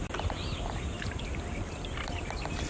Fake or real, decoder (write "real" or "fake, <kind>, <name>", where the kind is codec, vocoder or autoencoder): real